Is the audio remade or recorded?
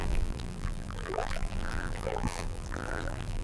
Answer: remade